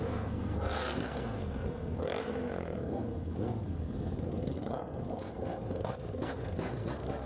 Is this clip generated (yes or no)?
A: yes